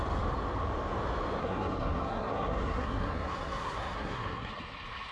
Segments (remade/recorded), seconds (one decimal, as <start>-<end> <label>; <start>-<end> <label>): 0.0-1.4 recorded; 1.4-4.5 remade; 4.5-5.1 recorded

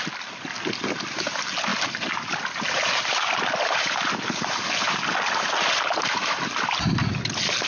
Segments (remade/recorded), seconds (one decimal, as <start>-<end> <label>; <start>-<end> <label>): 0.0-7.7 recorded

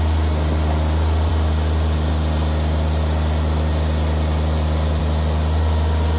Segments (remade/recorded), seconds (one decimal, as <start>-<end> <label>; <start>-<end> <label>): 0.0-6.2 recorded

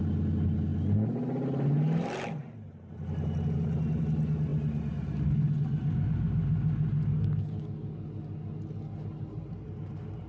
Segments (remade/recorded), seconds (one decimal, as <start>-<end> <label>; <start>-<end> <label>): 0.0-10.3 recorded

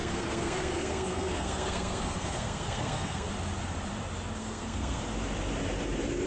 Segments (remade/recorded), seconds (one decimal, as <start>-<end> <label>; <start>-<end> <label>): 0.0-3.3 remade; 3.3-4.4 recorded; 4.4-5.0 remade; 5.0-6.3 recorded

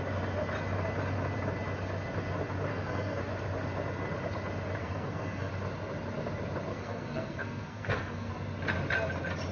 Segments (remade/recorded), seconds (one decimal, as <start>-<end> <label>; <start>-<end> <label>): 0.0-2.7 recorded; 2.7-3.2 remade; 3.2-4.8 recorded; 4.8-5.5 remade; 5.5-6.7 recorded; 6.7-8.3 remade; 8.3-9.5 recorded

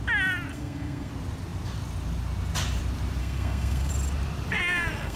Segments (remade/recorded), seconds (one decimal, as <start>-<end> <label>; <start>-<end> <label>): 0.0-0.5 recorded; 0.5-1.1 remade; 1.1-3.2 recorded; 3.2-3.9 remade; 3.9-4.5 recorded; 4.5-5.2 remade